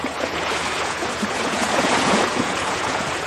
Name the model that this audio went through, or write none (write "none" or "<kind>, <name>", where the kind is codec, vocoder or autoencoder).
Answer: vocoder, Vocos